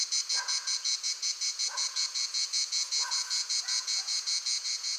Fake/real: fake